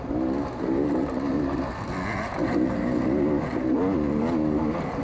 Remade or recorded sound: recorded